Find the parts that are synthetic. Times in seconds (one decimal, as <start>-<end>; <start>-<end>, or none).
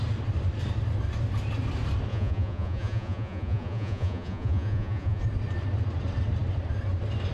2.1-5.2